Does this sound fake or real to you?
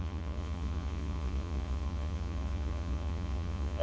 fake